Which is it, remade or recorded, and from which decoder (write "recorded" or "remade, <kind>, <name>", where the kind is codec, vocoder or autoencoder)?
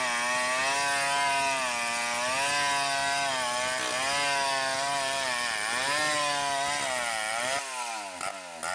recorded